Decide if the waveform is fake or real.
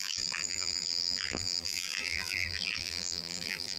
fake